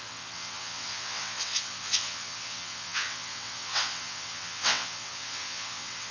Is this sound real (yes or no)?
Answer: no